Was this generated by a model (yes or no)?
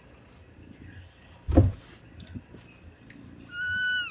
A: no